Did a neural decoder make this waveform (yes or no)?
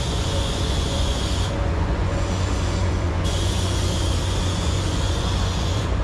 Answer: yes